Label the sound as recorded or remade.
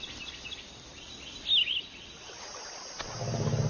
recorded